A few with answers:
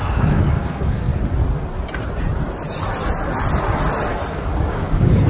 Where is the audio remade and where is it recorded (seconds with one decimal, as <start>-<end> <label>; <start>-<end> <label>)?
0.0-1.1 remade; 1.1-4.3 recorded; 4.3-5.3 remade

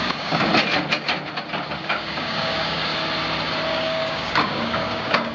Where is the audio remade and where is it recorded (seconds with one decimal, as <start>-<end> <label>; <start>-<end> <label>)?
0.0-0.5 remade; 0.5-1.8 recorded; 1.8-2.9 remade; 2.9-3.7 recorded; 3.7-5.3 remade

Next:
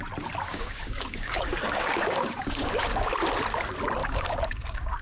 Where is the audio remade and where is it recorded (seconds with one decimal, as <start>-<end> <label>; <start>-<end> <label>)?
0.0-0.5 recorded; 0.5-3.1 remade; 3.1-4.0 recorded; 4.0-5.0 remade

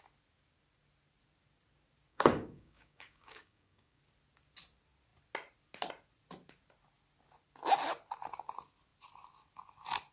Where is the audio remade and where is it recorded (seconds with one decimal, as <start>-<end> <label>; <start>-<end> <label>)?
0.0-2.1 recorded; 2.1-4.0 remade; 4.0-10.1 recorded

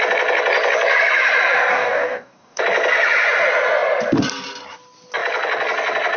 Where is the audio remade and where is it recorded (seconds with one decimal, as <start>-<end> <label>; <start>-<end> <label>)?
0.0-1.7 recorded; 1.7-2.6 remade; 2.6-6.2 recorded

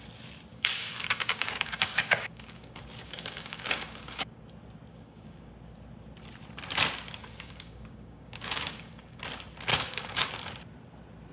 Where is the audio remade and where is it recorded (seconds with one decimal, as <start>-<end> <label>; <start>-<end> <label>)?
0.0-0.5 recorded; 0.5-4.4 remade; 4.4-4.9 recorded; 4.9-5.5 remade; 5.5-7.2 recorded; 7.2-9.2 remade; 9.2-9.7 recorded; 9.7-10.3 remade; 10.3-11.3 recorded

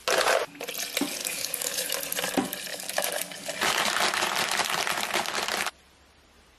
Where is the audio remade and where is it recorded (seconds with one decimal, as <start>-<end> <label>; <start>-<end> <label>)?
0.0-1.2 recorded; 1.2-1.9 remade; 1.9-2.7 recorded; 2.7-3.5 remade; 3.5-6.6 recorded